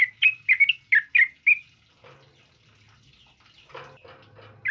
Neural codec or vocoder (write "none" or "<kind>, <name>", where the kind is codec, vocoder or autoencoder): none